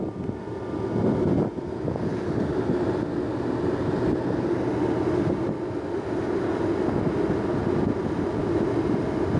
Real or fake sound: real